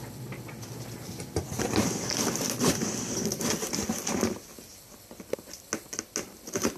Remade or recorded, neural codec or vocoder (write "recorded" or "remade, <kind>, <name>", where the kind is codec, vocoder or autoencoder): recorded